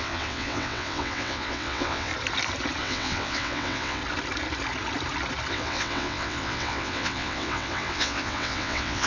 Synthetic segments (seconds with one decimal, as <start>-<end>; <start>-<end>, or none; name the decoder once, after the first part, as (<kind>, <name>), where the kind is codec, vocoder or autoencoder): 0.0-2.1 (vocoder, WaveNeXt); 2.8-4.0; 5.5-9.1